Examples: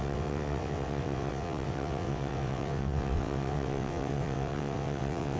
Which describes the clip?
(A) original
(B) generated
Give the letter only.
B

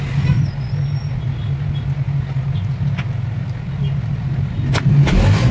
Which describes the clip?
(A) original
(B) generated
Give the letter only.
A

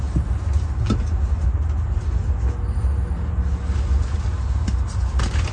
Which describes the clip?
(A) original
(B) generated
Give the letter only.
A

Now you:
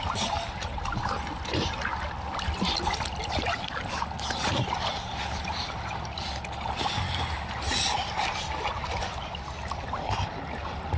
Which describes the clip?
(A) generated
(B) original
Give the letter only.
B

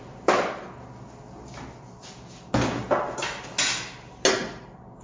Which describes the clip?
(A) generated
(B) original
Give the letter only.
B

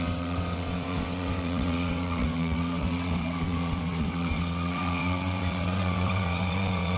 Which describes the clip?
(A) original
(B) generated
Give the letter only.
B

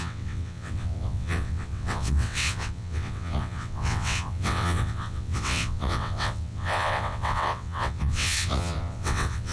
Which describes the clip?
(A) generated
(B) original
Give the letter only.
A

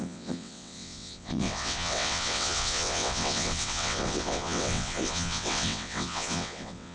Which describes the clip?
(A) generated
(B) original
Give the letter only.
A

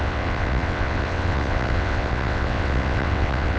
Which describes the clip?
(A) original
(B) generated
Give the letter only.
B